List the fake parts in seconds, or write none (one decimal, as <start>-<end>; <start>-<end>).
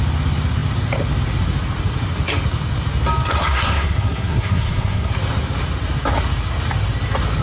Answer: 3.3-5.1